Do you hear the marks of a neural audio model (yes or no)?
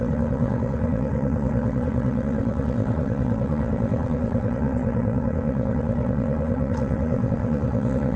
yes